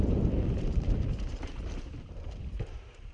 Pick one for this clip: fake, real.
fake